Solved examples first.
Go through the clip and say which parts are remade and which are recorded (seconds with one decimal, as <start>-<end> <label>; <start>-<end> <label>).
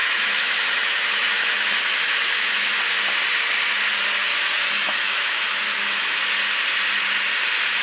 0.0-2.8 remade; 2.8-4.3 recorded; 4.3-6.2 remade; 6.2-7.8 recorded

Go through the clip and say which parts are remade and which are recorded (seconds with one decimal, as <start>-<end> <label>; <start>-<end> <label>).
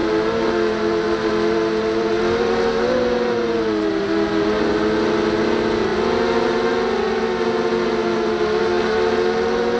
0.0-9.8 recorded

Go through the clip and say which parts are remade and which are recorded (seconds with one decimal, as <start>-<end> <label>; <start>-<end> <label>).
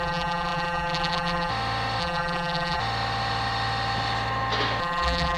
0.0-1.5 remade; 1.5-2.0 recorded; 2.0-2.8 remade; 2.8-4.8 recorded; 4.8-5.4 remade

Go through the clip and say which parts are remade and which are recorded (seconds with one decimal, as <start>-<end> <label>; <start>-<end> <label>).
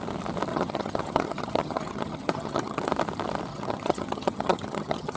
0.0-0.5 recorded; 0.5-2.9 remade; 2.9-3.5 recorded; 3.5-5.2 remade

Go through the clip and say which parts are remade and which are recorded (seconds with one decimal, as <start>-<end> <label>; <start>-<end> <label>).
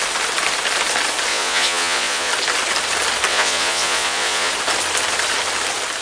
0.0-1.3 recorded; 1.3-2.3 remade; 2.3-3.3 recorded; 3.3-4.5 remade; 4.5-6.0 recorded